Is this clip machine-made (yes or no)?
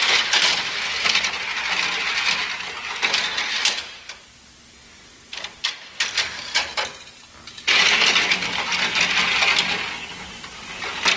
no